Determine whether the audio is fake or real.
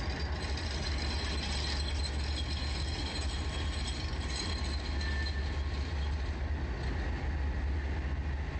real